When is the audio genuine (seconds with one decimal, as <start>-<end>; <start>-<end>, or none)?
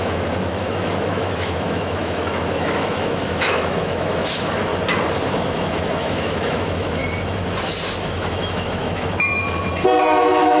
4.7-5.3; 7.0-8.0; 9.4-10.0